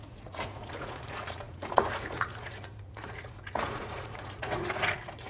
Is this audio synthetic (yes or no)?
yes